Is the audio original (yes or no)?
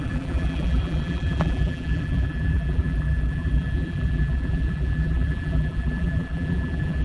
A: no